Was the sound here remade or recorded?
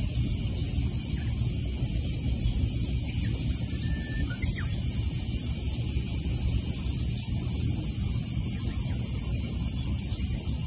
recorded